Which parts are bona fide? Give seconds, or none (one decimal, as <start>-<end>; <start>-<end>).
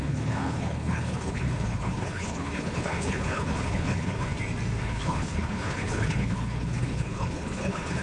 4.3-4.8